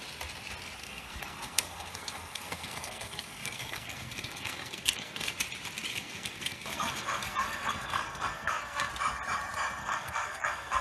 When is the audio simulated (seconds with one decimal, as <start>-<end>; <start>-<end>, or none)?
0.8-5.4; 5.9-8.9; 9.8-10.8